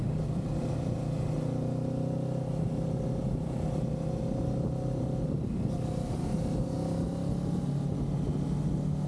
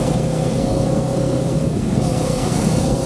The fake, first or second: second